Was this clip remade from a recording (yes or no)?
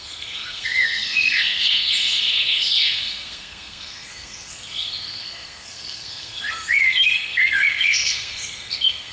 yes